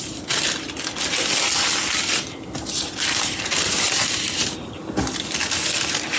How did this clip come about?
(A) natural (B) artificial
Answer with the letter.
A